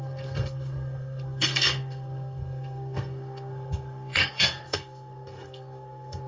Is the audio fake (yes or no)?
yes